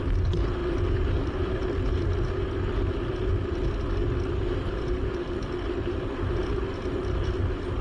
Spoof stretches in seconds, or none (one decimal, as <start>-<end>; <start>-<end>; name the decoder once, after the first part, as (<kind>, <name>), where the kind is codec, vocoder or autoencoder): none